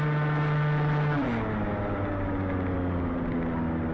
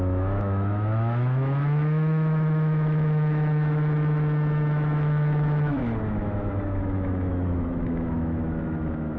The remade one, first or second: second